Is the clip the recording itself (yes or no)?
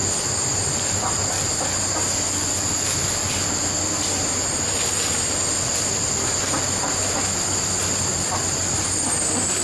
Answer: yes